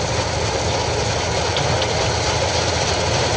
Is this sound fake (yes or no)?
no